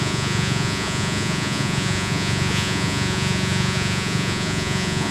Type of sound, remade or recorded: remade